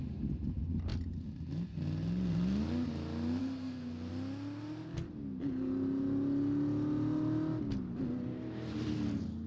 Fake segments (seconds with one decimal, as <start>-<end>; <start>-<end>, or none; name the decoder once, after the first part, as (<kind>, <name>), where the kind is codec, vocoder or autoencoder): 3.4-4.1 (codec, SNAC)